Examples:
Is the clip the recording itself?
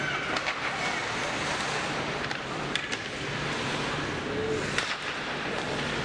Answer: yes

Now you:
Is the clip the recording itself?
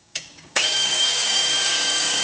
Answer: no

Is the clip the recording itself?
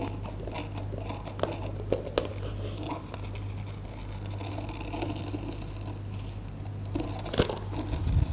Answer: yes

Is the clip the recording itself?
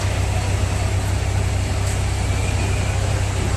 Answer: yes